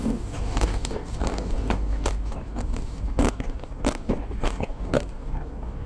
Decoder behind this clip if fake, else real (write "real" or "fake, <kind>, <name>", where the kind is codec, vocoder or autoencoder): fake, codec, DAC